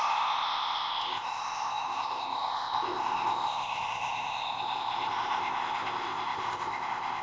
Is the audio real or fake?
fake